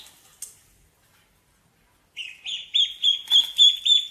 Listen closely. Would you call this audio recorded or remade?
recorded